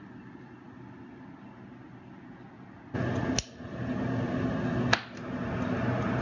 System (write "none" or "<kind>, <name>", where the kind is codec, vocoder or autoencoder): none